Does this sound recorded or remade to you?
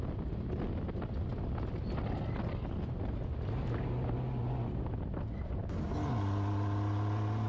recorded